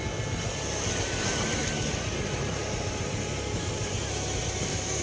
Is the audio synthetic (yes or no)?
no